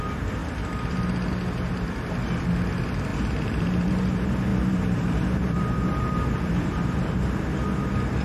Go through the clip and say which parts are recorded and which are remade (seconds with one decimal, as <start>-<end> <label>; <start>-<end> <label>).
0.0-3.1 recorded; 3.1-3.9 remade; 3.9-4.5 recorded; 4.5-7.4 remade; 7.4-8.2 recorded